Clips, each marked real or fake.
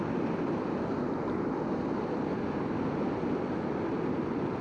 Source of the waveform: real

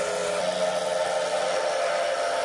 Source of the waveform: real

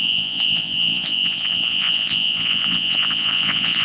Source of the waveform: fake